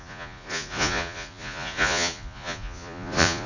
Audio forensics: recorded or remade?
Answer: remade